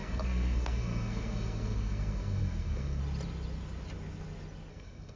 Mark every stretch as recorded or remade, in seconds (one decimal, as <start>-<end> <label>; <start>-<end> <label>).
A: 0.0-3.0 remade; 3.0-4.7 recorded; 4.7-5.2 remade